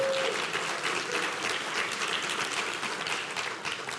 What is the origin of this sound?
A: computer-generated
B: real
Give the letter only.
B